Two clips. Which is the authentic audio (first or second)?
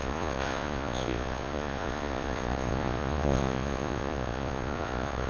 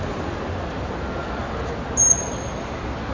second